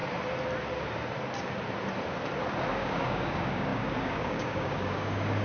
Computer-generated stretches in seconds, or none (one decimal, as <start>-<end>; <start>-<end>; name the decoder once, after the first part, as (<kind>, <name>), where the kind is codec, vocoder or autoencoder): 2.7-5.4 (codec, DAC)